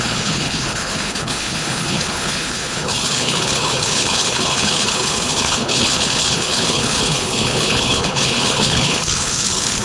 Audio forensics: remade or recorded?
remade